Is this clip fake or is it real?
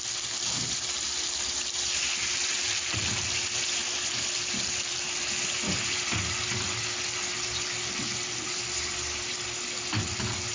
real